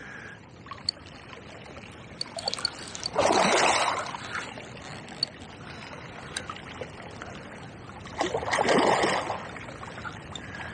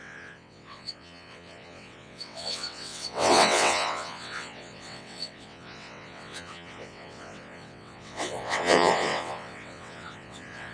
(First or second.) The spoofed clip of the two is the second